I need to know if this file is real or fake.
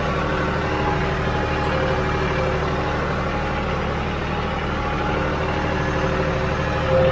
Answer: real